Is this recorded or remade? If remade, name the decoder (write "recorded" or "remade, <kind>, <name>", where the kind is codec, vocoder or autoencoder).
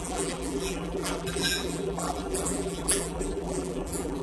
remade, vocoder, BigVGAN v2